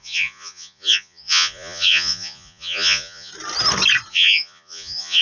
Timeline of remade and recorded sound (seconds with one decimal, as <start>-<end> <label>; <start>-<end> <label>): 0.0-3.3 remade; 3.3-4.1 recorded; 4.1-5.2 remade